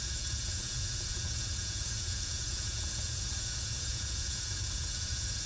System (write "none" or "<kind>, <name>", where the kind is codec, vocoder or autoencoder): vocoder, Vocos